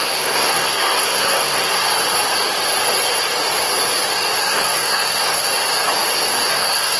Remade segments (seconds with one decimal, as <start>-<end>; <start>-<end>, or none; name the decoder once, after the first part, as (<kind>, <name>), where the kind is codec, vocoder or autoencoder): 0.0-1.9 (codec, SNAC); 4.4-5.5; 6.5-7.0